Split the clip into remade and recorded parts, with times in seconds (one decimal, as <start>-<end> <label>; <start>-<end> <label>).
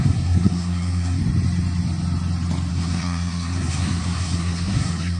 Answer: 0.0-1.2 remade; 1.2-2.7 recorded; 2.7-5.2 remade